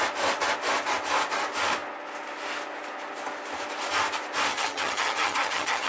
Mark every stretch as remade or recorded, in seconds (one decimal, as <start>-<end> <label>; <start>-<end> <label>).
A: 0.0-4.5 recorded; 4.5-5.9 remade